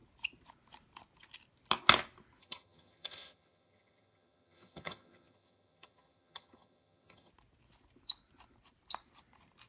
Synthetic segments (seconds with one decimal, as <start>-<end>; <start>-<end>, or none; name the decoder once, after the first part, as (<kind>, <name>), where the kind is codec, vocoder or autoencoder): 2.4-7.3 (vocoder, HiFi-GAN)